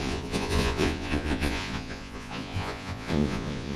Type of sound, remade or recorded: remade